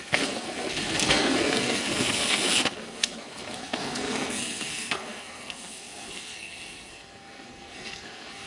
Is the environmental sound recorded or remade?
remade